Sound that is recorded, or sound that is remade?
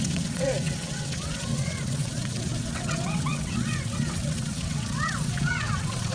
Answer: remade